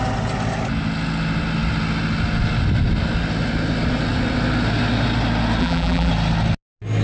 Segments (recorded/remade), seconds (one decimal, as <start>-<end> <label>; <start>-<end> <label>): 0.0-5.6 recorded; 5.6-6.1 remade; 6.1-7.0 recorded